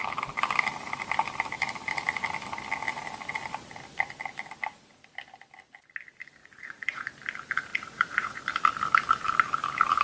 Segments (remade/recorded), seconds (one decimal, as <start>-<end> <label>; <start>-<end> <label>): 0.0-6.4 recorded; 6.4-7.1 remade; 7.1-7.7 recorded; 7.7-8.4 remade; 8.4-10.0 recorded